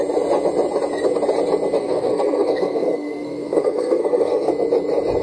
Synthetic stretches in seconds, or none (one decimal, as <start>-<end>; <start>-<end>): 1.8-4.5